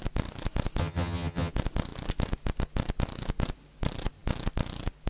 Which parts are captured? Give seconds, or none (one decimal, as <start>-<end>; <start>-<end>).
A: 0.0-0.8; 1.5-5.1